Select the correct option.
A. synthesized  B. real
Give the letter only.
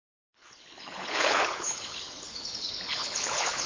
A